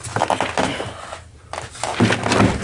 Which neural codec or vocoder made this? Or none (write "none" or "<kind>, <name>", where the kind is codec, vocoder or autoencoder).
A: none